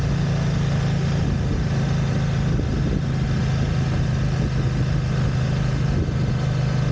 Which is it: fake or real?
real